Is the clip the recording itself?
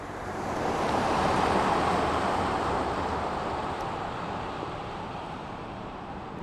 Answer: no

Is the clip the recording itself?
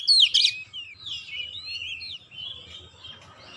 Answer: yes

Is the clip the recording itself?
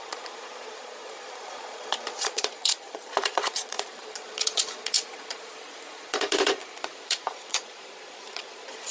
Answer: no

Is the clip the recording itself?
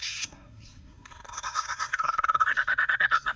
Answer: no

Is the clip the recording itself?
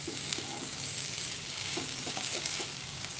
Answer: no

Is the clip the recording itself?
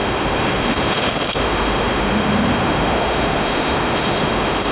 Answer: no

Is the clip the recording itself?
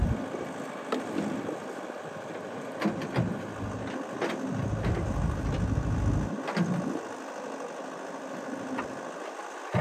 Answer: yes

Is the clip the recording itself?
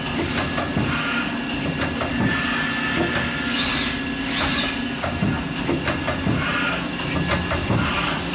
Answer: yes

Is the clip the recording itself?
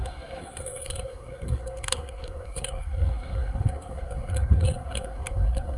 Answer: no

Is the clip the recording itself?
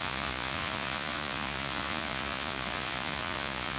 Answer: no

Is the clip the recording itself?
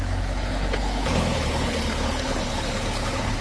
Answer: no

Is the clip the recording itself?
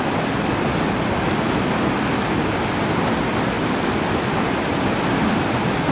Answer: yes